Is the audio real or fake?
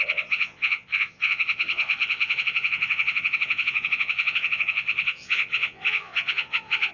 fake